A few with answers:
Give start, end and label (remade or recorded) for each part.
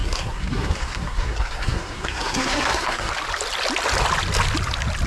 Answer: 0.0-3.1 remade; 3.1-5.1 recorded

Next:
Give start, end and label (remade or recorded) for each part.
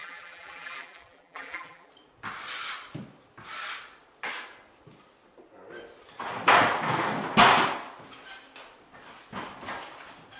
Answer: 0.0-1.9 remade; 1.9-10.4 recorded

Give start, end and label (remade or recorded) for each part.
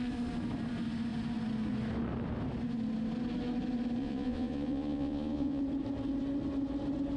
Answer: 0.0-4.0 recorded; 4.0-5.6 remade; 5.6-7.2 recorded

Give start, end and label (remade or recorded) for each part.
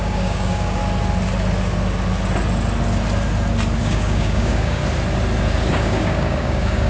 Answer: 0.0-0.8 remade; 0.8-3.8 recorded; 3.8-4.8 remade; 4.8-5.7 recorded; 5.7-6.9 remade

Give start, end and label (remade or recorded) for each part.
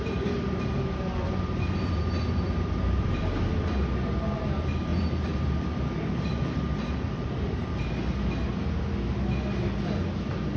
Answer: 0.0-4.9 recorded; 4.9-7.9 remade; 7.9-10.6 recorded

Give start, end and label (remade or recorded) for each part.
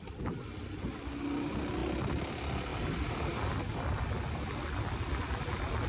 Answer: 0.0-5.9 recorded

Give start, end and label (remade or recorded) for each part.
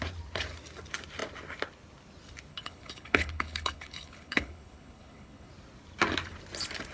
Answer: 0.0-2.5 recorded; 2.5-5.5 remade; 5.5-6.9 recorded